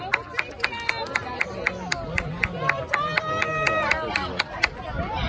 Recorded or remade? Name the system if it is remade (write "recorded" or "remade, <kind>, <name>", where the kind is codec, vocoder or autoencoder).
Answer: recorded